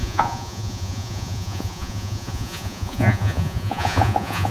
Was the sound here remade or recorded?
remade